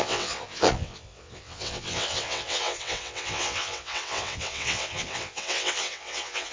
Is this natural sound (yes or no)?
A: no